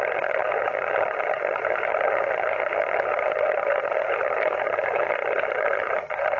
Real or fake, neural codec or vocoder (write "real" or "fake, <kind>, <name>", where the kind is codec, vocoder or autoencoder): fake, vocoder, HiFi-GAN